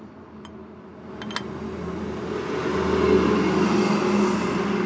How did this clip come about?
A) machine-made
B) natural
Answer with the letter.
B